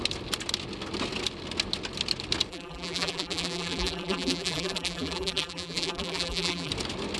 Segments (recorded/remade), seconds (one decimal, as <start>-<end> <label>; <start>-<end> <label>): 0.0-2.5 recorded; 2.5-6.7 remade; 6.7-7.2 recorded